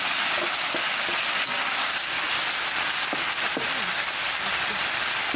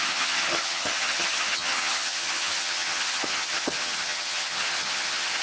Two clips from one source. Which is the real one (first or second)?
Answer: first